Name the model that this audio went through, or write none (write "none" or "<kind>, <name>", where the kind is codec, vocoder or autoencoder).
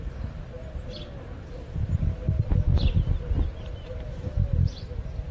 none